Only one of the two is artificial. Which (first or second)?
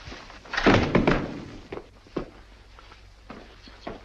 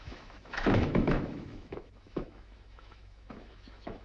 second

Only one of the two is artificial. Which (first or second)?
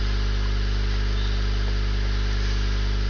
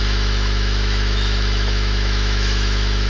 second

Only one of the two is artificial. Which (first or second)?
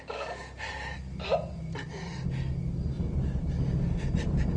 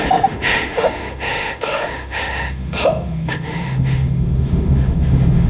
second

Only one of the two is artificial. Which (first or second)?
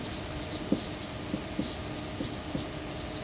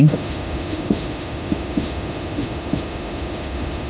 second